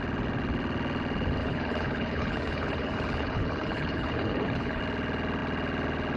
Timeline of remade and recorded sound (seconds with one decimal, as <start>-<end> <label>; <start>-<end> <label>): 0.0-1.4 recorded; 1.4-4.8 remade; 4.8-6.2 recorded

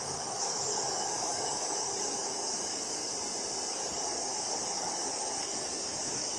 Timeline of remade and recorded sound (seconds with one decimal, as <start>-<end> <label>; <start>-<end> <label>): 0.0-3.1 remade; 3.1-3.7 recorded; 3.7-6.4 remade

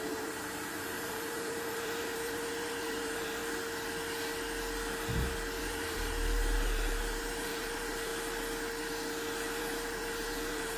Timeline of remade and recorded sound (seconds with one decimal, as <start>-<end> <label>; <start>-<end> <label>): 0.0-3.4 remade; 3.4-5.6 recorded; 5.6-8.1 remade; 8.1-9.6 recorded; 9.6-10.8 remade

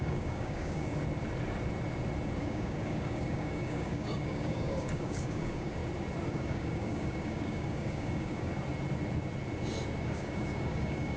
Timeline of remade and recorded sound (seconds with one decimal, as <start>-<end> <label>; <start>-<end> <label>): 0.0-0.9 remade; 0.9-2.4 recorded; 2.4-5.8 remade; 5.8-6.3 recorded; 6.3-8.5 remade; 8.5-10.0 recorded; 10.0-11.2 remade